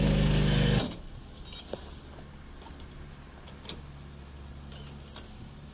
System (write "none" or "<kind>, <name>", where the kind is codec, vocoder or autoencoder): none